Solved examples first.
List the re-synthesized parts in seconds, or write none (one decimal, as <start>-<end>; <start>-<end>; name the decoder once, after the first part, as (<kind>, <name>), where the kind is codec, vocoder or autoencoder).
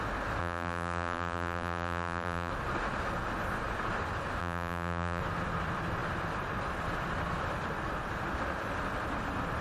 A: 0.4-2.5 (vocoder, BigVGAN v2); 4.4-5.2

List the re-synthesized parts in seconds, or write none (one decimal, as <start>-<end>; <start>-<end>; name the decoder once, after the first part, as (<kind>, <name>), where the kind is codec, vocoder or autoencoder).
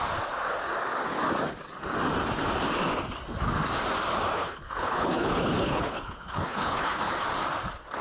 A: 4.3-7.0 (codec, HILCodec)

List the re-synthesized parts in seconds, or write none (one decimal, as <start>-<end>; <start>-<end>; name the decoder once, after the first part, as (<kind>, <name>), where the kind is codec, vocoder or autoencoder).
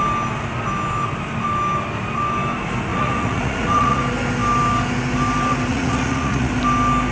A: 2.9-4.0 (vocoder, Vocos); 5.7-6.5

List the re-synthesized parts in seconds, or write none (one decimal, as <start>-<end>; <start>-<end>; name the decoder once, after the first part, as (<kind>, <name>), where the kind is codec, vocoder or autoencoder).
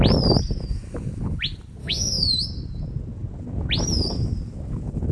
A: 1.8-2.3 (autoencoder, DAC-VAE)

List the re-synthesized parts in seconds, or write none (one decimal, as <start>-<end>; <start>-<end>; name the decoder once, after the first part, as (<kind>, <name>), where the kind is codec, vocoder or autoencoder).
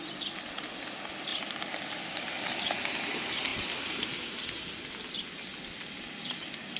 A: none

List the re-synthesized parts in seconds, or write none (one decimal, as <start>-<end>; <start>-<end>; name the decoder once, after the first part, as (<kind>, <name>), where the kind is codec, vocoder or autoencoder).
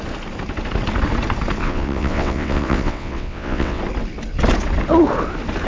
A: 1.6-3.8 (vocoder, WaveNeXt)